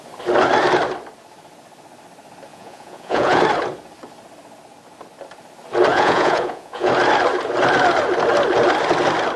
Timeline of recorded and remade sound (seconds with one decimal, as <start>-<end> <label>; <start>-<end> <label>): 0.0-2.5 recorded; 2.5-3.4 remade; 3.4-5.9 recorded; 5.9-6.9 remade; 6.9-9.4 recorded